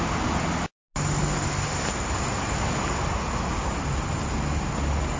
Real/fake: real